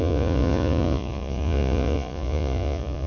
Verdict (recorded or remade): remade